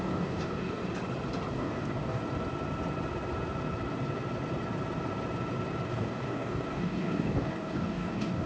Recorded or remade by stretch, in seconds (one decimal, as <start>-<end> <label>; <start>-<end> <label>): 0.0-0.8 remade; 0.8-1.5 recorded; 1.5-2.2 remade; 2.2-5.9 recorded; 5.9-8.5 remade